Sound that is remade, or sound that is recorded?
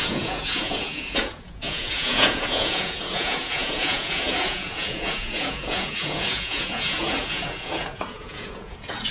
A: remade